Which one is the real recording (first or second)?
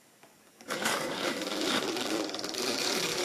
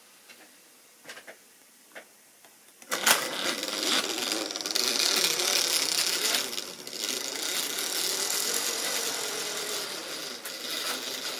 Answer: second